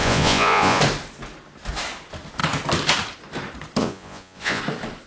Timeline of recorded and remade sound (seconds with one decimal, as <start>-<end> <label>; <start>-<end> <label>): 0.0-0.8 remade; 0.8-3.8 recorded; 3.8-4.6 remade; 4.6-5.1 recorded